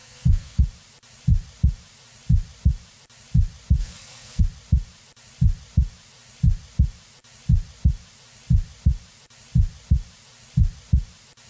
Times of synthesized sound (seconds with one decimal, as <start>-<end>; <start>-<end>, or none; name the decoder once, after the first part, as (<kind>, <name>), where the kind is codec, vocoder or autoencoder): 0.0-0.6 (codec, SNAC); 3.8-4.4